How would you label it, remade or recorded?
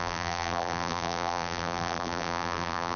remade